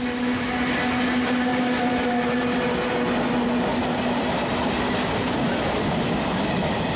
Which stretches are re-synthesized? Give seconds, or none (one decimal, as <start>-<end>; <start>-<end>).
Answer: none

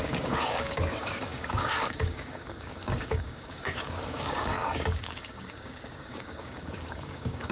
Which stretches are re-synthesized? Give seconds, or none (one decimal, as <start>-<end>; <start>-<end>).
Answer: 0.0-7.5

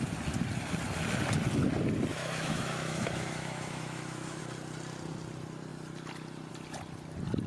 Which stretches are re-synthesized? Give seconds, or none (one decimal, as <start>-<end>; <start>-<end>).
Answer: 2.1-4.4